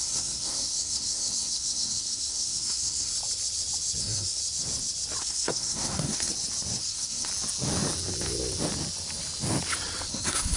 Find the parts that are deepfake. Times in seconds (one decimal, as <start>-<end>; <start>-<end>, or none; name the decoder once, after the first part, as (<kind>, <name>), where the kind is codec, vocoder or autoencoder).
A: 0.0-3.1 (codec, SNAC); 4.0-4.4; 5.2-6.3; 6.8-7.3; 10.1-10.6